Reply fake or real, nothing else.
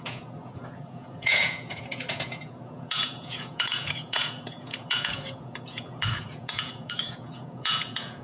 fake